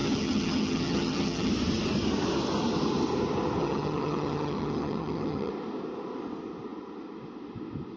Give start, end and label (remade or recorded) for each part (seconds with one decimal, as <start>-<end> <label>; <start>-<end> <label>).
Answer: 0.0-1.5 remade; 1.5-3.6 recorded; 3.6-5.5 remade; 5.5-8.0 recorded